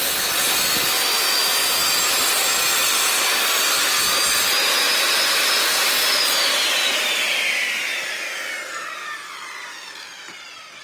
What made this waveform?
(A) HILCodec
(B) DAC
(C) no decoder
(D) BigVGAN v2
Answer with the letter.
C